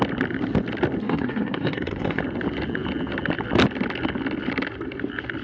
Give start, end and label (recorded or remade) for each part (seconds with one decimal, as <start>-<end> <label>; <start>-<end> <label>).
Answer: 0.0-1.0 recorded; 1.0-2.2 remade; 2.2-5.4 recorded

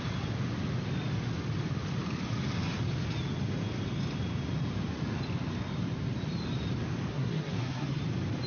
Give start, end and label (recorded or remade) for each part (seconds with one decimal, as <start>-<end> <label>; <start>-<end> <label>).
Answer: 0.0-7.1 recorded; 7.1-8.0 remade; 8.0-8.5 recorded